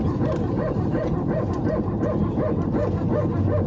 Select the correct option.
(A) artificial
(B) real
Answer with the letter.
A